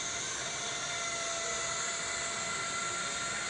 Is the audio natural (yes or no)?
yes